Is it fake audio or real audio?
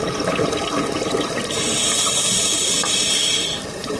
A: real